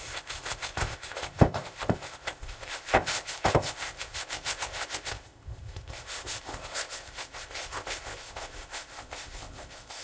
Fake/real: fake